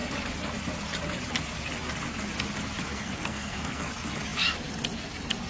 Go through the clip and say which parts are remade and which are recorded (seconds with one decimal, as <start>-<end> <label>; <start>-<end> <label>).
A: 0.0-2.9 recorded; 2.9-3.9 remade; 3.9-5.5 recorded